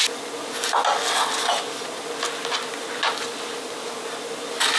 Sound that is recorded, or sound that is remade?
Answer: recorded